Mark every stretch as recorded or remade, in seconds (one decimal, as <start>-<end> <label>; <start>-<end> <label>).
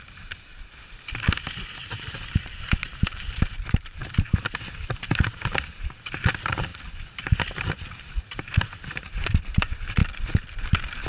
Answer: 0.0-0.5 remade; 0.5-1.8 recorded; 1.8-6.7 remade; 6.7-7.4 recorded; 7.4-10.0 remade; 10.0-11.1 recorded